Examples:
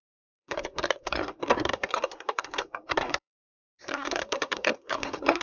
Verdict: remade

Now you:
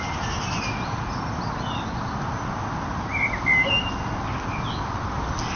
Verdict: recorded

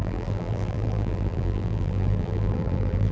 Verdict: remade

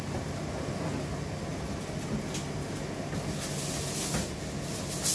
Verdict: recorded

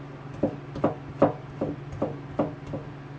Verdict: recorded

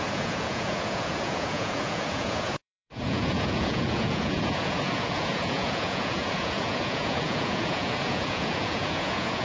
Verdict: remade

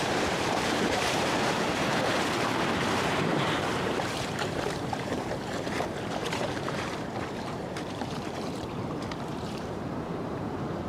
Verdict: remade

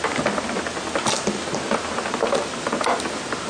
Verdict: recorded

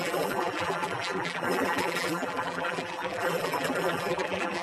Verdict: remade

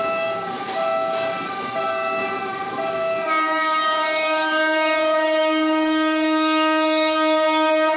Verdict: remade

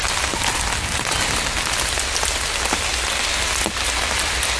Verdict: recorded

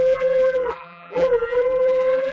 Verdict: remade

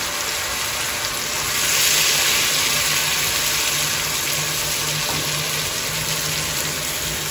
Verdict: recorded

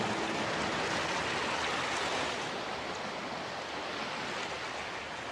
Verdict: recorded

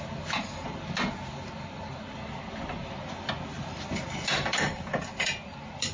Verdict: recorded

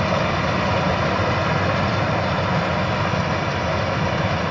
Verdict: recorded